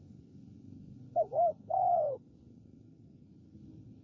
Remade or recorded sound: remade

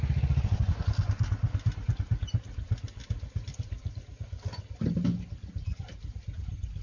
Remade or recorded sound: recorded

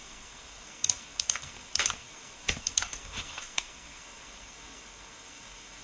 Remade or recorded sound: remade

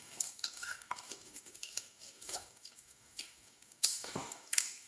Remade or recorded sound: remade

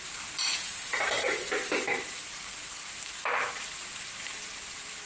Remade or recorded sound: remade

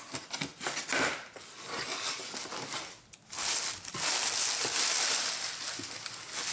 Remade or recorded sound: recorded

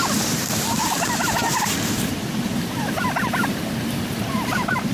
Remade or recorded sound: remade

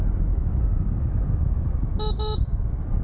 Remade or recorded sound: recorded